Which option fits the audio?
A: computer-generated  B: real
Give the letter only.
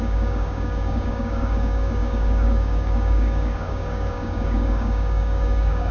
A